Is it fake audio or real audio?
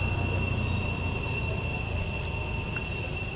real